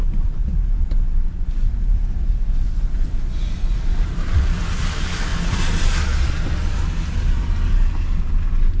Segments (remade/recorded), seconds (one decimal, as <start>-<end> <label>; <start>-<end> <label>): 0.0-8.8 remade